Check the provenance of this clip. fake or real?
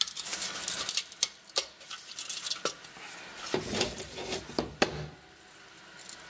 fake